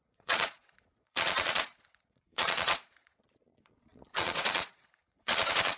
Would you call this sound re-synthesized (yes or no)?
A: yes